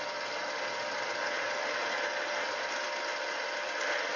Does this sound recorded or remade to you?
recorded